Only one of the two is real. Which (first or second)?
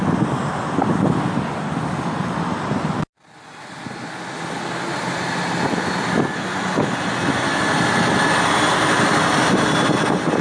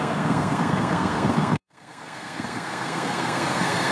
first